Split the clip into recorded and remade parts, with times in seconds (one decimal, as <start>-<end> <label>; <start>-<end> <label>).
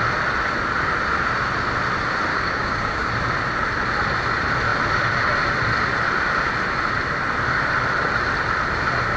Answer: 0.0-2.3 recorded; 2.3-3.1 remade; 3.1-9.2 recorded